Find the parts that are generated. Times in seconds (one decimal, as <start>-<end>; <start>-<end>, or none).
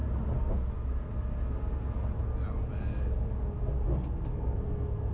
4.3-5.1